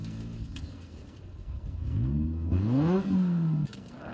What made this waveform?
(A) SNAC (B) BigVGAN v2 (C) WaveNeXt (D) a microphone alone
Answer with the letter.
A